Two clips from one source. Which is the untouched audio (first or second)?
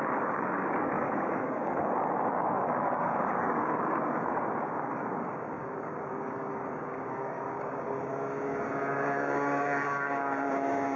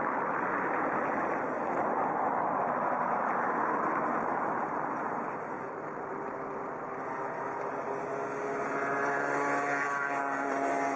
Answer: second